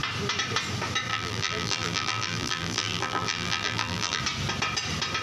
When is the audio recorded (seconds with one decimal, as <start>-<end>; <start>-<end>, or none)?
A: 0.0-1.1; 4.2-5.2